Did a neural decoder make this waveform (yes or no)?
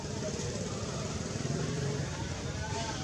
no